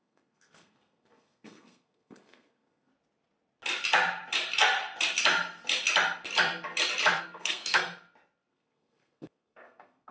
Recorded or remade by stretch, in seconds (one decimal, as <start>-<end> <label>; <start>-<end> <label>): 0.0-2.9 remade; 2.9-7.2 recorded; 7.2-7.8 remade; 7.8-8.5 recorded; 8.5-10.1 remade